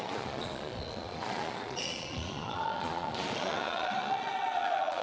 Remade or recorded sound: remade